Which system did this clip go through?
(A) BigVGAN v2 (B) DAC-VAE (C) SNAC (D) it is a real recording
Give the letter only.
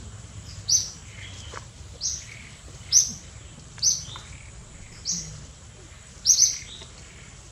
D